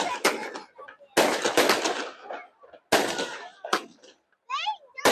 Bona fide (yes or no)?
yes